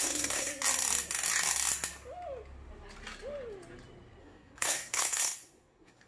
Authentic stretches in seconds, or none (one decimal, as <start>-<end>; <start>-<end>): 0.5-4.2